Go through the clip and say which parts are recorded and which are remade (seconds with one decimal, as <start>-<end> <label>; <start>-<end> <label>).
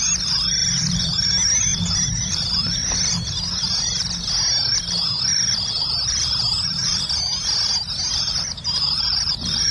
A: 0.0-0.6 recorded; 0.6-1.2 remade; 1.2-1.7 recorded; 1.7-2.4 remade; 2.4-5.3 recorded; 5.3-7.0 remade; 7.0-9.7 recorded